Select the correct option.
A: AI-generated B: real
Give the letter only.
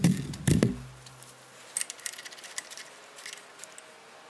B